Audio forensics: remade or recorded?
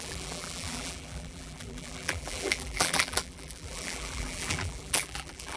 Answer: remade